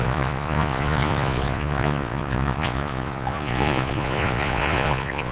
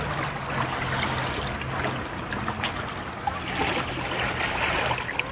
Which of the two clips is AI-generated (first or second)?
first